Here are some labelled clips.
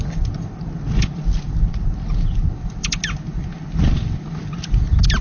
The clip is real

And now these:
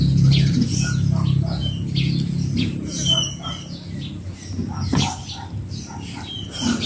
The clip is real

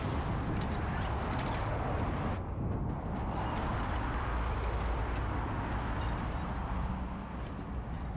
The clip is real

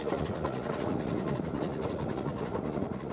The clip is fake